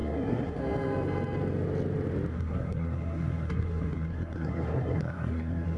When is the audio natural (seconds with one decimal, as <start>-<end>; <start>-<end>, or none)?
0.6-2.3